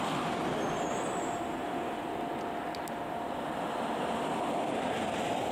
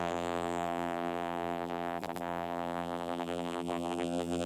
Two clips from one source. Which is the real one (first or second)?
first